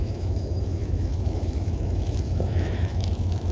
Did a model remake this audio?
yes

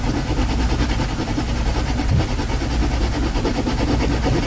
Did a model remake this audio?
no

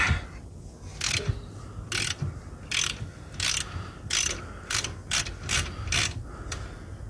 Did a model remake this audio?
no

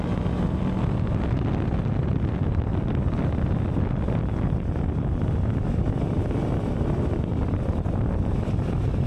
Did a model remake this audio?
no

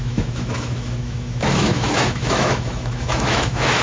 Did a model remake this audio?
yes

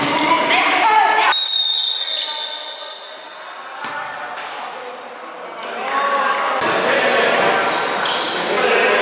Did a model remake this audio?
no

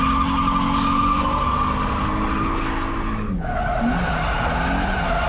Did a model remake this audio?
no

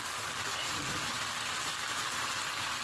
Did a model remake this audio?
no